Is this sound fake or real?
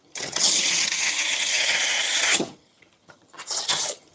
fake